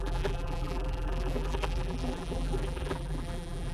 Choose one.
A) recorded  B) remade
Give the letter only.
B